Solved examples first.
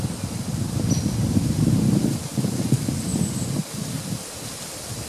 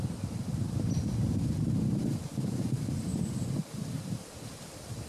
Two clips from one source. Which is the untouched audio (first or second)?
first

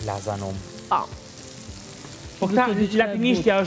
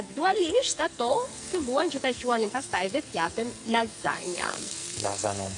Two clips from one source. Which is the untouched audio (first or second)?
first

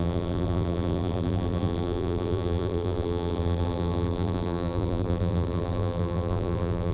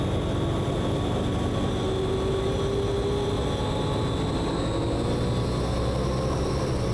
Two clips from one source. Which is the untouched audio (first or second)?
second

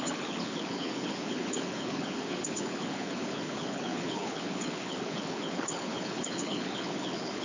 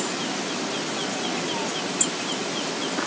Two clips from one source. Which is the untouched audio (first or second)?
second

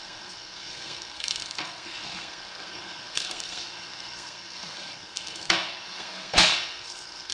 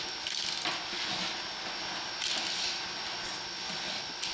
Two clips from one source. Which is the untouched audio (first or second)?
second